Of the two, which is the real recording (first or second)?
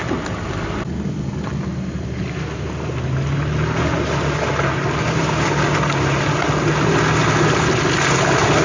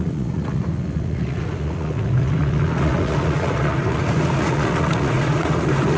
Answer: first